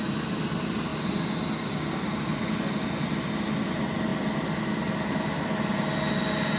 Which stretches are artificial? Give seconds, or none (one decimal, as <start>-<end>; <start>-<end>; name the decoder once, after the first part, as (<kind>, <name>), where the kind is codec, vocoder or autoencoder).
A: none